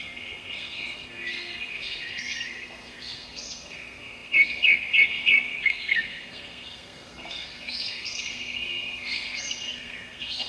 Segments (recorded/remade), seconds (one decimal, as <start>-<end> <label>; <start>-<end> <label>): 0.0-10.5 remade